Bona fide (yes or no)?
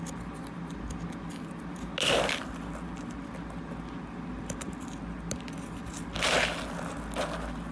yes